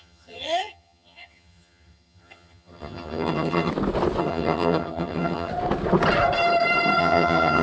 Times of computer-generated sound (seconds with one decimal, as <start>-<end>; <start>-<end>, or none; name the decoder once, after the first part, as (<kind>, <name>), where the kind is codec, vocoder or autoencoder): 0.0-3.7 (vocoder, HiFi-GAN); 4.2-5.5; 7.0-7.6